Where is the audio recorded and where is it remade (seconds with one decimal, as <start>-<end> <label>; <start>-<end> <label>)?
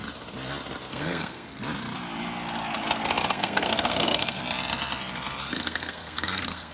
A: 0.0-0.9 recorded; 0.9-1.6 remade; 1.6-3.3 recorded; 3.3-4.4 remade; 4.4-5.4 recorded; 5.4-6.7 remade